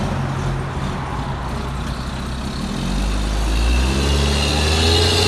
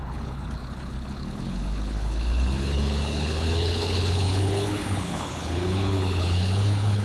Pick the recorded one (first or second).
first